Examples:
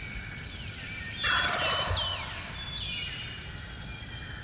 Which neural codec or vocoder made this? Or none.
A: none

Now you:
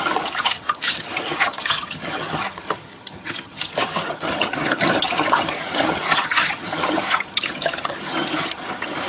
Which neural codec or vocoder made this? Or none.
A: vocoder, HiFi-GAN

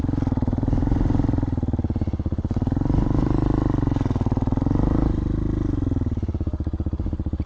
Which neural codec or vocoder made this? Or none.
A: none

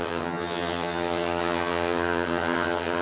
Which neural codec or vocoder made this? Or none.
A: vocoder, HiFi-GAN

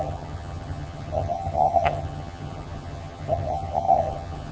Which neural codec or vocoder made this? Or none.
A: vocoder, HiFi-GAN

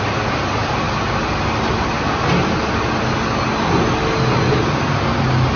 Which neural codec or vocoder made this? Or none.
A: none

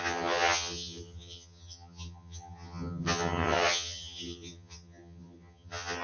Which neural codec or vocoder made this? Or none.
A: vocoder, HiFi-GAN